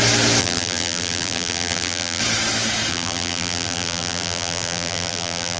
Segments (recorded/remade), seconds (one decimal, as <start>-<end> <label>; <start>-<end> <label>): 0.0-0.4 recorded; 0.4-2.2 remade; 2.2-2.9 recorded; 2.9-5.6 remade